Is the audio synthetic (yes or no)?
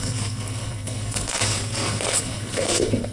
yes